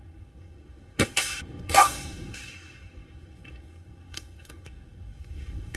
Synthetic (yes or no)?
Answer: yes